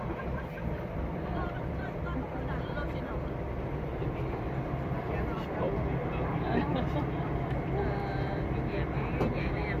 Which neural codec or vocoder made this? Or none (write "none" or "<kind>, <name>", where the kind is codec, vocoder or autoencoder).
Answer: vocoder, BigVGAN v2